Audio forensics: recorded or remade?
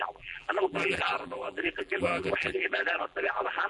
remade